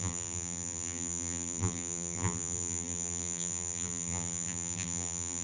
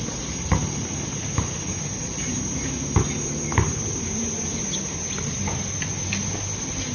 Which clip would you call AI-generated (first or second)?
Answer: first